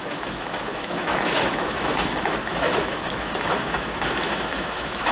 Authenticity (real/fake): fake